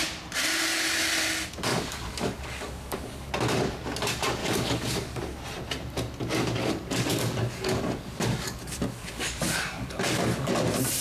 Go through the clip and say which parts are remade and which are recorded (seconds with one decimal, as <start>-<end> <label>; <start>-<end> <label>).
0.0-1.7 recorded; 1.7-3.3 remade; 3.3-4.4 recorded; 4.4-5.2 remade; 5.2-6.6 recorded; 6.6-10.5 remade; 10.5-11.0 recorded